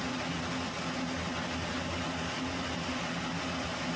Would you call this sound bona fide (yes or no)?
yes